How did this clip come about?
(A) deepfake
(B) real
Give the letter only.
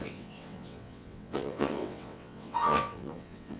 A